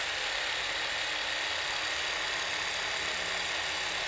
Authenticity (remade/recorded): recorded